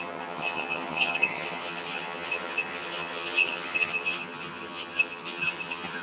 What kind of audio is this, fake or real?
fake